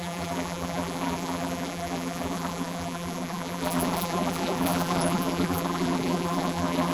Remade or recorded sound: remade